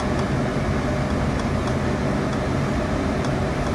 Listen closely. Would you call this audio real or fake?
real